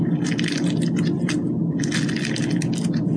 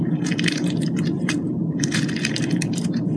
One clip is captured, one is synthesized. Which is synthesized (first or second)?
second